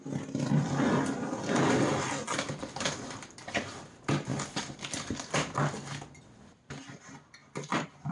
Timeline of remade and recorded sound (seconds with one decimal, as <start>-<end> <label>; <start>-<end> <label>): 0.0-7.4 recorded; 7.4-8.1 remade